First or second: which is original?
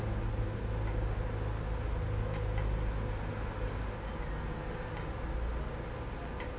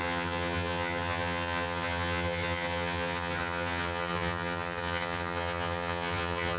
first